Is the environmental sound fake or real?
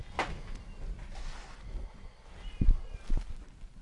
real